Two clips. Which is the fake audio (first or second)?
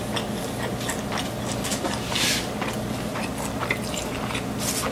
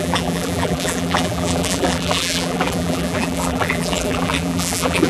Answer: second